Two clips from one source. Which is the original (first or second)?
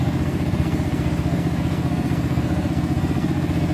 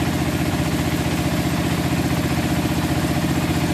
second